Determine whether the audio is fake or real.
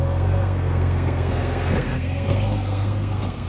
fake